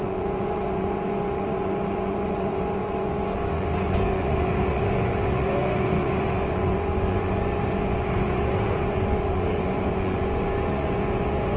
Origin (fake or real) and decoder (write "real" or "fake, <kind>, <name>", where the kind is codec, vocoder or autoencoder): fake, vocoder, Vocos